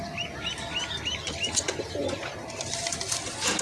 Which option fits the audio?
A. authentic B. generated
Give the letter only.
A